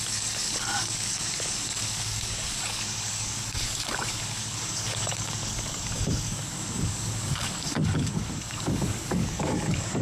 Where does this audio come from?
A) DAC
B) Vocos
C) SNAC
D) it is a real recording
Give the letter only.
A